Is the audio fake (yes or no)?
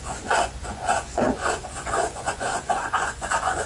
yes